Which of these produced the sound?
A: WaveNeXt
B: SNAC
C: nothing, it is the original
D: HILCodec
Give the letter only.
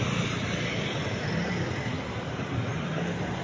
C